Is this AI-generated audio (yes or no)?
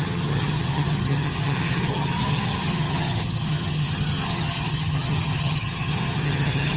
yes